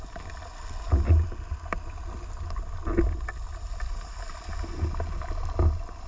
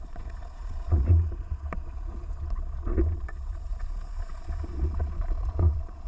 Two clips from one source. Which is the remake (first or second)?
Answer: second